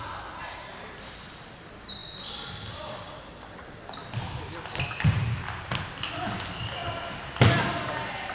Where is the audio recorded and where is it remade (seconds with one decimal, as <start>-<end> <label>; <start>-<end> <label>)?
0.0-8.3 recorded